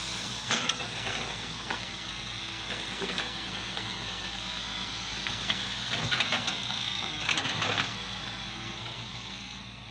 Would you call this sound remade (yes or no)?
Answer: yes